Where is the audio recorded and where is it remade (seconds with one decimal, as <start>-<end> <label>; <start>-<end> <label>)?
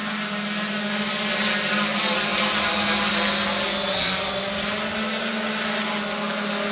0.0-6.7 recorded